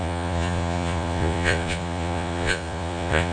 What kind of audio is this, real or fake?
fake